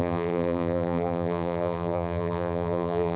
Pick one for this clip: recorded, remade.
remade